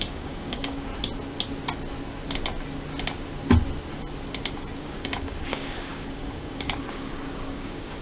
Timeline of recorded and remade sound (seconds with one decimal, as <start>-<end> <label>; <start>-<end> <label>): 0.0-0.9 remade; 0.9-4.8 recorded; 4.8-8.0 remade